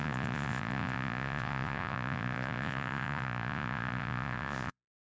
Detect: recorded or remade remade